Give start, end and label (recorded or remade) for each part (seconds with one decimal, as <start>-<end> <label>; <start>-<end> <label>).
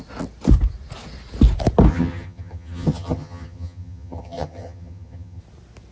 0.0-1.9 recorded; 1.9-5.4 remade; 5.4-5.9 recorded